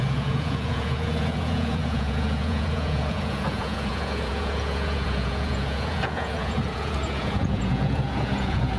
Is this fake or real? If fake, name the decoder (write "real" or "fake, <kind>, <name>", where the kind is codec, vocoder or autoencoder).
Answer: fake, vocoder, Vocos